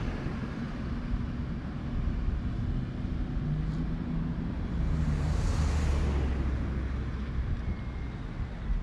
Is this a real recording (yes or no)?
yes